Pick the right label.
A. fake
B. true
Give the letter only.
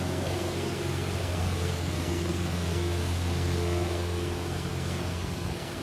A